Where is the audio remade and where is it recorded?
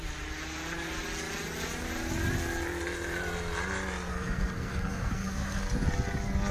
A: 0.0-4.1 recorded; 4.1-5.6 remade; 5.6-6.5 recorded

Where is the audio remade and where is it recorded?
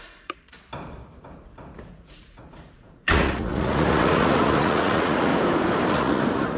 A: 0.0-0.7 remade; 0.7-1.9 recorded; 1.9-5.3 remade; 5.3-5.9 recorded; 5.9-6.6 remade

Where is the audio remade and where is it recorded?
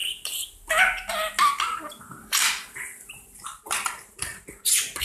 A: 0.0-2.0 recorded; 2.0-4.3 remade; 4.3-5.0 recorded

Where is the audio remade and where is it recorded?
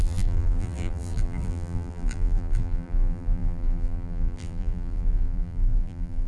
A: 0.0-6.3 remade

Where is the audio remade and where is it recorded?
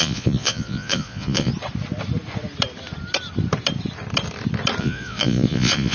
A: 0.0-1.5 remade; 1.5-4.8 recorded; 4.8-5.9 remade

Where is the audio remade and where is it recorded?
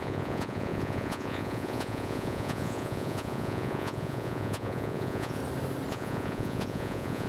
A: 0.0-5.4 remade; 5.4-5.9 recorded; 5.9-7.3 remade